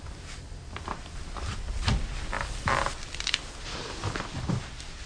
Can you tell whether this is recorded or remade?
remade